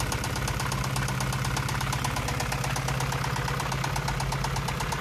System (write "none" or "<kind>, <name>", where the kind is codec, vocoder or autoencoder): none